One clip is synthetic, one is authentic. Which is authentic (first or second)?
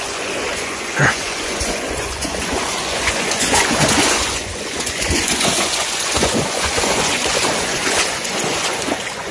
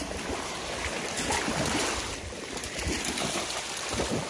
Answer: second